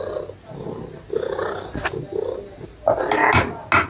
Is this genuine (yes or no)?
yes